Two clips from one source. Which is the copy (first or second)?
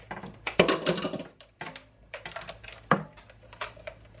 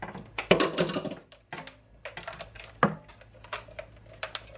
first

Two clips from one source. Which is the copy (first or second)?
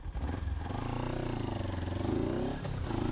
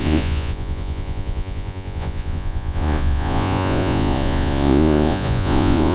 second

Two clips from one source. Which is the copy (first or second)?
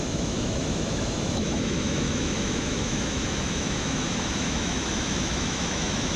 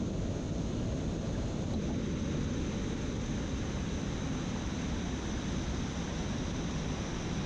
first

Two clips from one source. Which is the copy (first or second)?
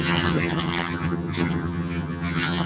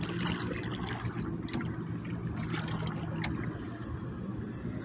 first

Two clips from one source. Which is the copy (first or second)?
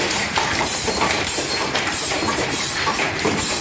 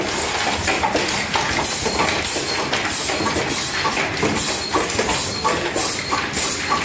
first